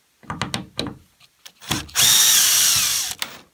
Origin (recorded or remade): recorded